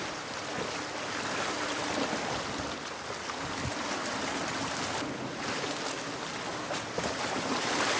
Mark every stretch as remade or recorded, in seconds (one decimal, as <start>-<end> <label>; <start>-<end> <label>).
0.0-8.0 recorded